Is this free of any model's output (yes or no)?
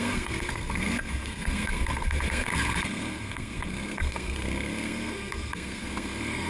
no